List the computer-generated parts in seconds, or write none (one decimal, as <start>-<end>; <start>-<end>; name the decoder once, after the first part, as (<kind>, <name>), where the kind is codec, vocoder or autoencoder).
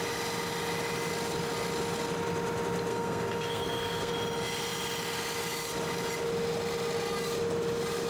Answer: 2.9-4.1 (codec, SNAC)